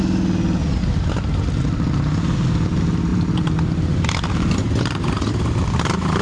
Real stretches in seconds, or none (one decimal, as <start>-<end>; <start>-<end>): 0.0-3.1; 5.3-6.2